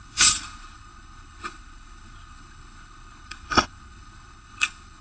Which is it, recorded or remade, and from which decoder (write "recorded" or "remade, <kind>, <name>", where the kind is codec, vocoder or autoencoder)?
remade, codec, HILCodec